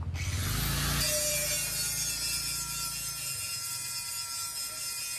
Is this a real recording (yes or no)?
yes